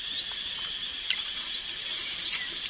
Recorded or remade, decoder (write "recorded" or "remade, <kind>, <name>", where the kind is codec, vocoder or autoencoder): recorded